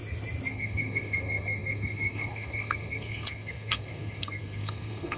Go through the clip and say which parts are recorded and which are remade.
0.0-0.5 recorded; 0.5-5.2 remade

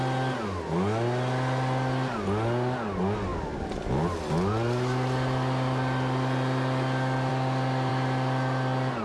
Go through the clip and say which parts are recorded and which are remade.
0.0-9.0 recorded